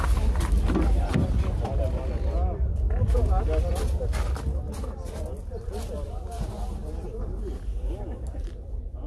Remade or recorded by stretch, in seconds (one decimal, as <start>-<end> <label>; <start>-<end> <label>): 0.0-9.1 recorded